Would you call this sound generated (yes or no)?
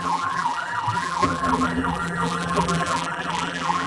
yes